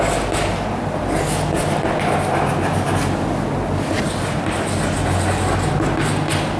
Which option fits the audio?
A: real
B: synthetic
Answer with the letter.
A